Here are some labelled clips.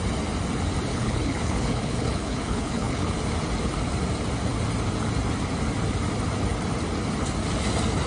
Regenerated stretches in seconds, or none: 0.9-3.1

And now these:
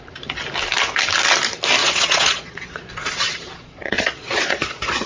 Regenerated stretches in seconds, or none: 1.8-5.1

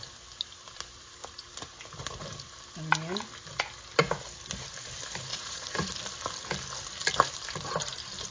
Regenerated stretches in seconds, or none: 5.3-5.9